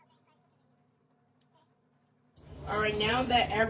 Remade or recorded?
remade